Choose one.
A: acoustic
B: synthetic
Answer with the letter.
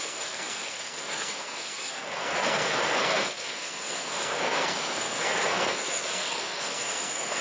B